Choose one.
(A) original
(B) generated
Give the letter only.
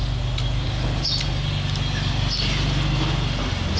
A